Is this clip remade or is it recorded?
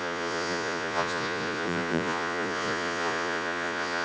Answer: remade